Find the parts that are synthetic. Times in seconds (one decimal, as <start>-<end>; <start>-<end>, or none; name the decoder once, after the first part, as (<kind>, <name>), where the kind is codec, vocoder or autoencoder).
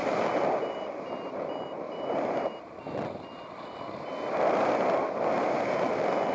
0.0-3.8 (vocoder, BigVGAN v2)